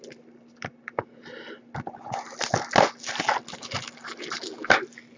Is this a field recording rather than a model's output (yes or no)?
yes